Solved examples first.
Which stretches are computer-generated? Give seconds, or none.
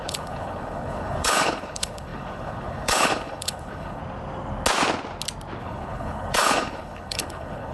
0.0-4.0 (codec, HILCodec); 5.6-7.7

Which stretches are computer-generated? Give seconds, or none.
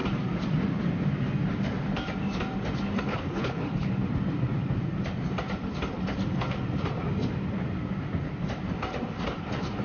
3.1-3.9 (codec, HILCodec)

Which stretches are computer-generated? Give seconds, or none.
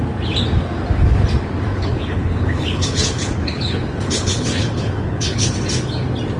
1.7-5.5 (codec, HILCodec)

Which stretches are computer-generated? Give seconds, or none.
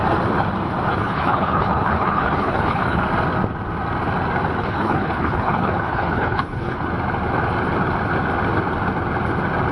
0.9-3.0 (codec, HILCodec); 4.6-6.9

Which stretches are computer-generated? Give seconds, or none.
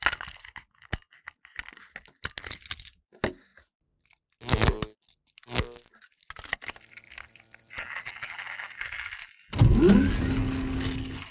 none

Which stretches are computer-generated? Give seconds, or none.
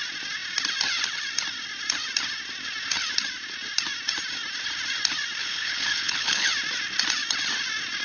5.4-6.5 (codec, HILCodec)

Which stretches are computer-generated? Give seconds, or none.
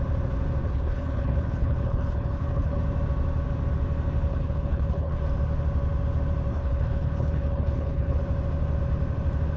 0.6-2.8 (codec, HILCodec); 4.3-5.2; 6.5-8.2